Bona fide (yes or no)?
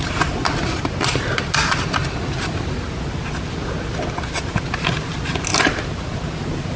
yes